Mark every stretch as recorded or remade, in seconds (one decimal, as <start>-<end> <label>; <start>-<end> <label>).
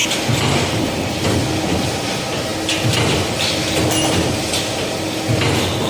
0.0-5.9 recorded